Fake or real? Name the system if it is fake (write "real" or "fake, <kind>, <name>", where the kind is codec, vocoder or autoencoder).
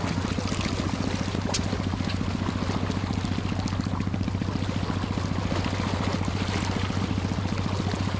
real